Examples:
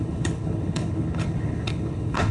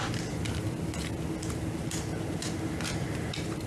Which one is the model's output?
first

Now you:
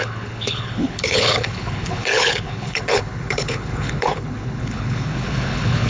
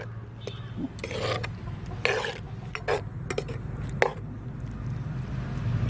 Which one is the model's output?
first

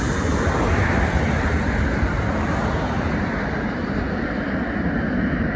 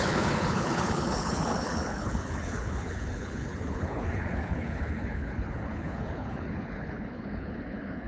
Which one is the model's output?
second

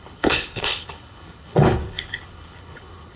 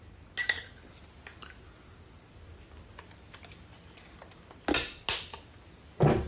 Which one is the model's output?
first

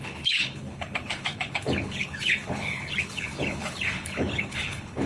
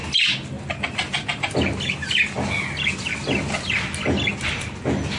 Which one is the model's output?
first